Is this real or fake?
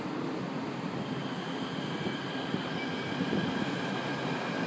real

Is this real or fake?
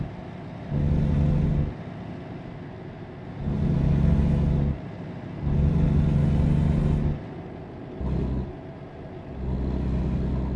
real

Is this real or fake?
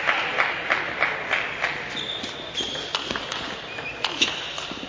real